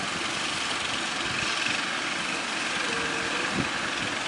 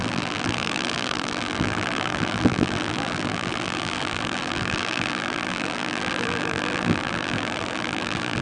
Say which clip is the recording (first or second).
first